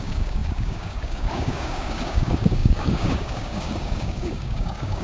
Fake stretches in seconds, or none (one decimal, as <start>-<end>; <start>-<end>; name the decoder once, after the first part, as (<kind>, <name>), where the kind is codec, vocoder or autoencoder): 0.0-5.0 (codec, DAC)